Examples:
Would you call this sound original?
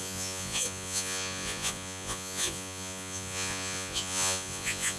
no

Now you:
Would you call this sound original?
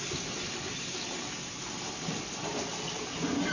yes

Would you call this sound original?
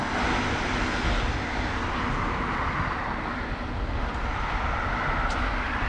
yes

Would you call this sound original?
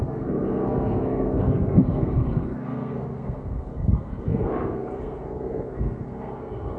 no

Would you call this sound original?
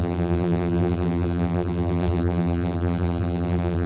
no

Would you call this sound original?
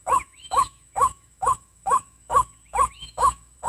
no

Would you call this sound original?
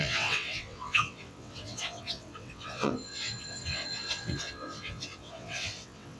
no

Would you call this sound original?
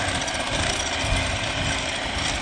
yes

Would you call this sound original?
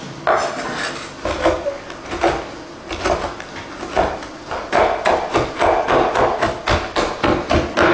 yes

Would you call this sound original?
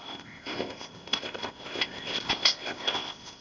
no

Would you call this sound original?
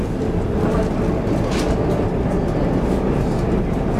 yes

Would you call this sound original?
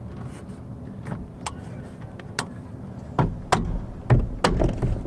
yes